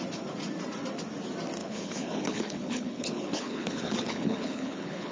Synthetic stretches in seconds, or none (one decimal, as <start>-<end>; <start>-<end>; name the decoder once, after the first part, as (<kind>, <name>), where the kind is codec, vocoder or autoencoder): 1.6-5.1 (codec, HILCodec)